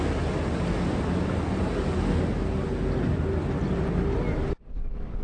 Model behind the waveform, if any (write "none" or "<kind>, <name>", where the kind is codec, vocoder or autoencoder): none